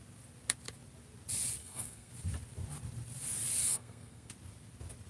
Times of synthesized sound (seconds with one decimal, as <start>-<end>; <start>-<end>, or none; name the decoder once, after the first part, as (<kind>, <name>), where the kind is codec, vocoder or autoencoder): 1.6-2.1 (codec, SNAC); 3.6-4.3